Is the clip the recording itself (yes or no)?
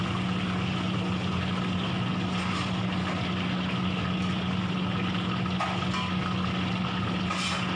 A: yes